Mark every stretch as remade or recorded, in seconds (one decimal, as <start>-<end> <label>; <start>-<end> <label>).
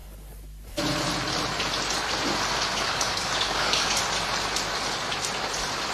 0.0-2.7 recorded; 2.7-4.0 remade; 4.0-5.9 recorded